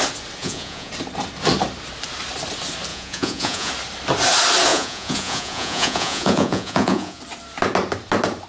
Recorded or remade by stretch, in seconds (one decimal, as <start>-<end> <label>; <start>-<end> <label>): 0.0-0.4 recorded; 0.4-0.9 remade; 0.9-2.9 recorded; 2.9-3.7 remade; 3.7-4.7 recorded; 4.7-7.2 remade; 7.2-8.5 recorded